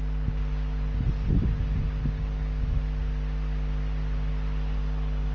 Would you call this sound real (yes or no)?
yes